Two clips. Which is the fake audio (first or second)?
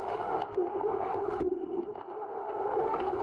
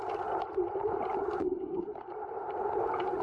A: first